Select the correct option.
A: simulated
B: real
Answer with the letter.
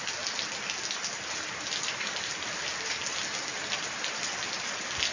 B